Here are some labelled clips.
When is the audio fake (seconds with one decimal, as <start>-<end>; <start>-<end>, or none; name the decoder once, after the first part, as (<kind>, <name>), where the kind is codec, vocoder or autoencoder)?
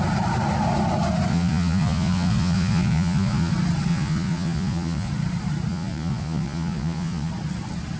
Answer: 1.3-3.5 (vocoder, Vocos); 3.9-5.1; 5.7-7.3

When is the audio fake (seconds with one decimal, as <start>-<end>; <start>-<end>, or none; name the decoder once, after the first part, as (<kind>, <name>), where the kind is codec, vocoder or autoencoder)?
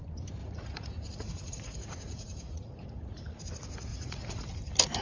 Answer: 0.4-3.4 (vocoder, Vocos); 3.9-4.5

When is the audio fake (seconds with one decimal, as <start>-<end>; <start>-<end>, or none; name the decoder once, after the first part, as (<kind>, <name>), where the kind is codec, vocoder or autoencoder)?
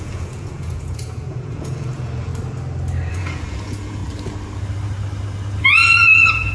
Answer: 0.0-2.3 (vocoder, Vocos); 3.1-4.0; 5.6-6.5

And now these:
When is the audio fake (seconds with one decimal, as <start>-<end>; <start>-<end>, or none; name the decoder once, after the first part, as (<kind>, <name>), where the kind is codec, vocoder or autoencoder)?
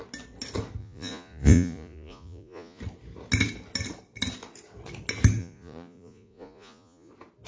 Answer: 0.8-2.8 (vocoder, Vocos); 5.4-7.1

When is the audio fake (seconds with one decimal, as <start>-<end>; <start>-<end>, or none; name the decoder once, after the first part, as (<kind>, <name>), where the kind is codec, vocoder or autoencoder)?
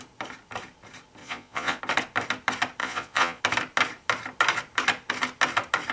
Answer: 1.2-1.8 (vocoder, Vocos); 2.8-3.4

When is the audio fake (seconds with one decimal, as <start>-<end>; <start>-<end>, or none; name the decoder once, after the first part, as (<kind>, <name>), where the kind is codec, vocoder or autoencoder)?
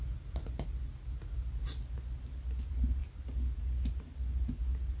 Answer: none